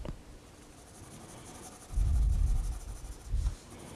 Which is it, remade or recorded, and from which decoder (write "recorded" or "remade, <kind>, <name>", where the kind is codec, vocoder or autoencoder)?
recorded